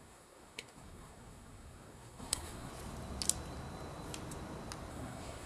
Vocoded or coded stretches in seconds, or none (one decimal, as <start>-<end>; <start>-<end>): 0.0-2.7; 4.9-5.5